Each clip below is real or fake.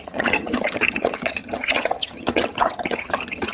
fake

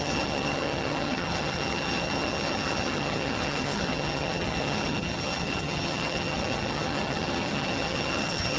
fake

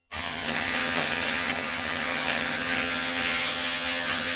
fake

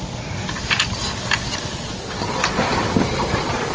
real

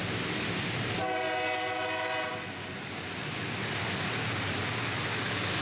real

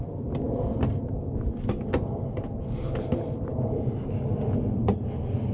real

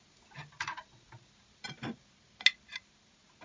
real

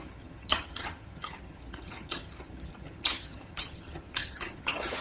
fake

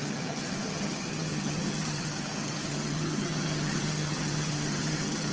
fake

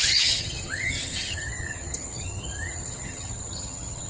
fake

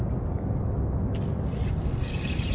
real